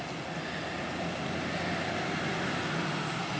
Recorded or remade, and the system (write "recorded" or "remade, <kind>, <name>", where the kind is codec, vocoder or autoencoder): recorded